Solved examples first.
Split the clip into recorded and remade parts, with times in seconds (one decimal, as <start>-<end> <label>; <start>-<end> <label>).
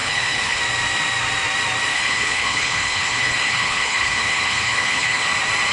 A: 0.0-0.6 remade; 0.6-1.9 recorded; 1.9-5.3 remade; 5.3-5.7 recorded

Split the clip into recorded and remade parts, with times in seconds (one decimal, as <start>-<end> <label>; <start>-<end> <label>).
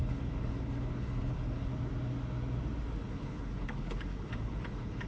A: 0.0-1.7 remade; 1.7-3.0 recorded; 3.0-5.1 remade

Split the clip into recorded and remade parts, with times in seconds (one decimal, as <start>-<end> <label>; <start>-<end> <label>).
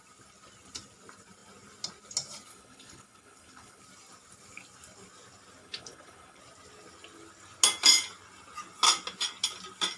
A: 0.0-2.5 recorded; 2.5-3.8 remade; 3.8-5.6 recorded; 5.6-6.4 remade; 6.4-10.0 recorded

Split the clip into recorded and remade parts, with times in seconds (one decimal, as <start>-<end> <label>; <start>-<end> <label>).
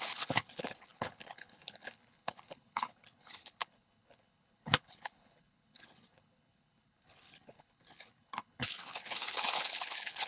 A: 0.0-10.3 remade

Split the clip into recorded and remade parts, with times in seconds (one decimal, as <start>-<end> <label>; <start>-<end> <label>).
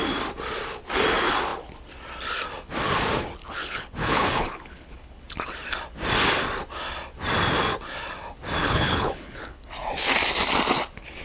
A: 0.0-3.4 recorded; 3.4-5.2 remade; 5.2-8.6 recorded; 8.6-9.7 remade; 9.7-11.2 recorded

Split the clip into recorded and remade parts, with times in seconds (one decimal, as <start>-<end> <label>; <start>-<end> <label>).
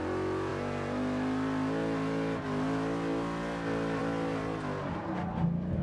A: 0.0-5.8 recorded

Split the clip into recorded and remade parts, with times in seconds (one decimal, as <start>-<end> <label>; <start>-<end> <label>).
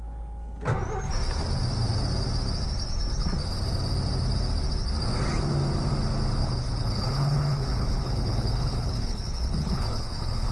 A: 0.0-6.4 recorded; 6.4-10.5 remade